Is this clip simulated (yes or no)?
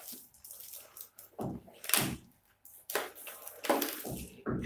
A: no